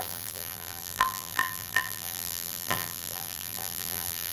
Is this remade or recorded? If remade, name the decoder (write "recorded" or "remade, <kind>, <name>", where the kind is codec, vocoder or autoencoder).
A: remade, vocoder, BigVGAN v2